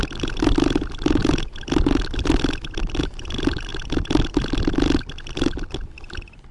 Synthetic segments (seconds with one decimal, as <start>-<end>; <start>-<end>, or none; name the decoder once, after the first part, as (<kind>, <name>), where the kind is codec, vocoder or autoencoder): 0.0-3.7 (vocoder, BigVGAN v2); 5.3-6.5